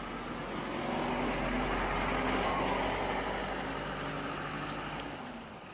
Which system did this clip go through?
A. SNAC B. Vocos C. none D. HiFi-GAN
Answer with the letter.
C